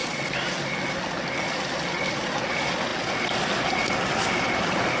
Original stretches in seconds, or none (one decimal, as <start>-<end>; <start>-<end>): 0.0-5.0